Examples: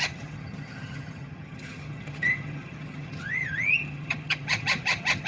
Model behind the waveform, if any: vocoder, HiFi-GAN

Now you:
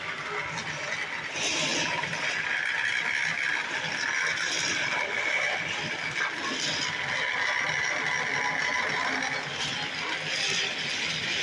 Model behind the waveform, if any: none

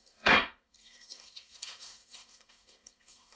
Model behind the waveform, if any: codec, SNAC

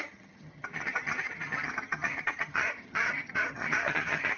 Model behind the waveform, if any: vocoder, HiFi-GAN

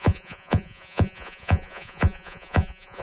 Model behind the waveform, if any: vocoder, Vocos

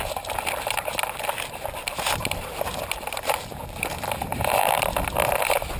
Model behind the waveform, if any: none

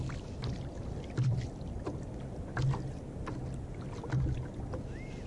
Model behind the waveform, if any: none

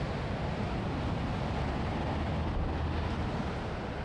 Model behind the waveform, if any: none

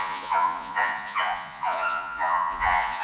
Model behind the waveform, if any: vocoder, Vocos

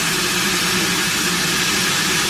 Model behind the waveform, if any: none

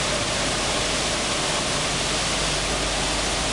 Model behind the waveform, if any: none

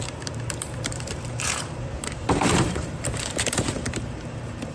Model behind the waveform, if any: vocoder, BigVGAN v2